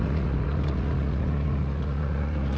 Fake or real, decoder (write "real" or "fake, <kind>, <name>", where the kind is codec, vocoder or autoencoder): fake, vocoder, Vocos